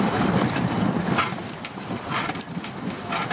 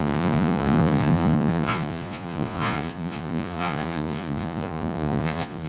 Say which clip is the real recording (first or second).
first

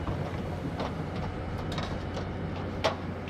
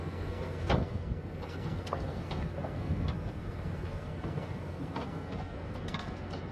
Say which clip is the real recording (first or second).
first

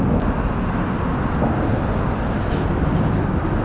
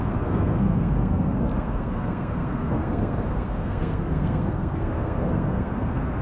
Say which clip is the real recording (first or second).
first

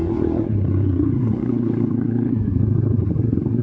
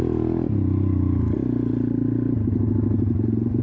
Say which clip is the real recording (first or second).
second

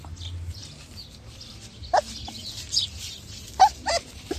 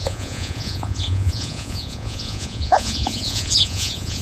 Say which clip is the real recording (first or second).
first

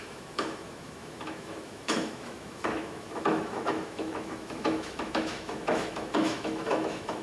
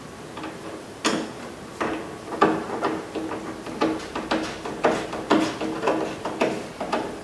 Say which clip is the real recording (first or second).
second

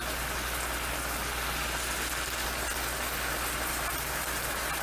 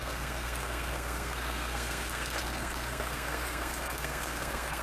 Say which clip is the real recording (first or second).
first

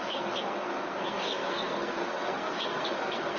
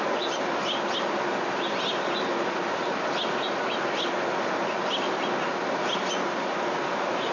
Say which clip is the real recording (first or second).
second